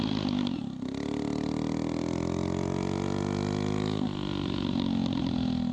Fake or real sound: real